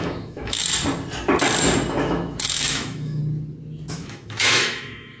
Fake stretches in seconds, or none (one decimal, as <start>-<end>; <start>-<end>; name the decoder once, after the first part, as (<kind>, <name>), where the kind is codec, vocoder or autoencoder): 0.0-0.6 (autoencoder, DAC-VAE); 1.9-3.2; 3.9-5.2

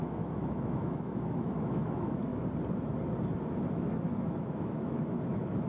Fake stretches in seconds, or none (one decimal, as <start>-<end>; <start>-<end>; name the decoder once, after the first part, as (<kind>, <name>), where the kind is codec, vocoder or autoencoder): 0.0-2.3 (autoencoder, DAC-VAE); 3.7-5.7

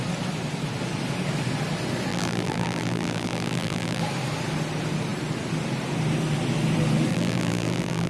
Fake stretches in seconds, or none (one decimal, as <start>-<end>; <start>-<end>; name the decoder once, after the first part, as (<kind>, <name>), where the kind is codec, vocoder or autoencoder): 2.1-4.0 (vocoder, BigVGAN v2); 7.1-8.1

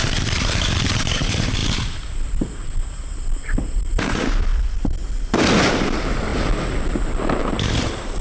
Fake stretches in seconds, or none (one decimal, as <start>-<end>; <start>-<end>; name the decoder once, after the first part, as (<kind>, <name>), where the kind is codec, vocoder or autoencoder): 0.0-4.5 (vocoder, BigVGAN v2); 5.7-6.3; 7.4-8.2